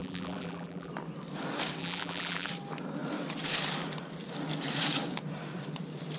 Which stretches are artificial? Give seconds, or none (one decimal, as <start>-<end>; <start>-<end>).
0.0-0.9; 1.8-2.5